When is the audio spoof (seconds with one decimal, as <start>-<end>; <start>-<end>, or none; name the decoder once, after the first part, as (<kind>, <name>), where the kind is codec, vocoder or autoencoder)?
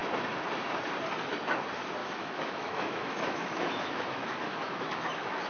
2.0-5.5 (autoencoder, DAC-VAE)